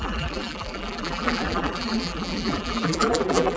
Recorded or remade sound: remade